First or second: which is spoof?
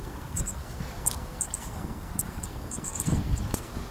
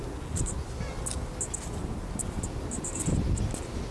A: first